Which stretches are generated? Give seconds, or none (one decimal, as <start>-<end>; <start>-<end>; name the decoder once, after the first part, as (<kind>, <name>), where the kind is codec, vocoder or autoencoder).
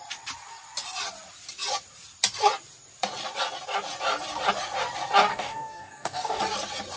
5.3-6.4 (codec, DAC)